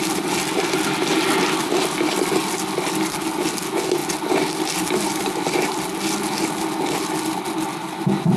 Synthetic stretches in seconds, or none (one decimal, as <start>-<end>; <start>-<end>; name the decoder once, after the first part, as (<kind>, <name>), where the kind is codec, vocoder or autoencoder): none